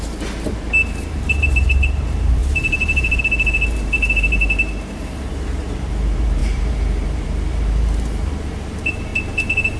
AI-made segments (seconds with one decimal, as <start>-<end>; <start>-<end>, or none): 0.0-9.1